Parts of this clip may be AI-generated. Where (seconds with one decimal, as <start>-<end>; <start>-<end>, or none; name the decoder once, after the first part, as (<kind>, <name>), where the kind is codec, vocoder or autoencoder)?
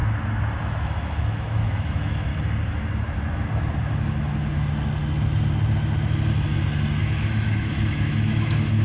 0.6-2.3 (autoencoder, DAC-VAE); 7.0-8.8